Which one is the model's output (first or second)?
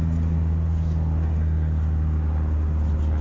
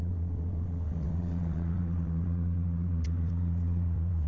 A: second